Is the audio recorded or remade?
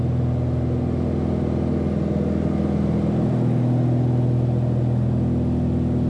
recorded